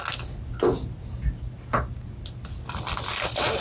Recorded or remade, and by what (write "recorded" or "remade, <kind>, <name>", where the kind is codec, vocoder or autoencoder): recorded